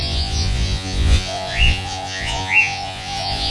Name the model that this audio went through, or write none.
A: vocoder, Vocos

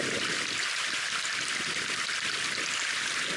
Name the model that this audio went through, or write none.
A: none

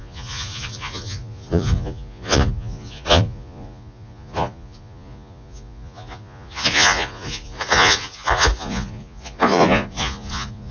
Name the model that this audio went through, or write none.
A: vocoder, Vocos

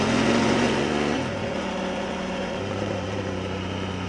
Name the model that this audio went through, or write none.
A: vocoder, Vocos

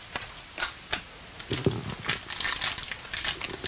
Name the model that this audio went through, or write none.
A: none